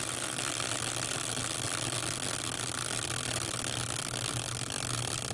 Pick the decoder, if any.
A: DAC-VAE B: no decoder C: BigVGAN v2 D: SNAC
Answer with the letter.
B